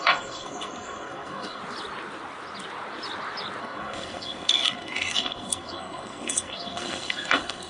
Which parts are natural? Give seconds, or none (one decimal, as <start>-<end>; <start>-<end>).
1.6-3.6